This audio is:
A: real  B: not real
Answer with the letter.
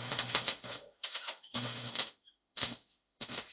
B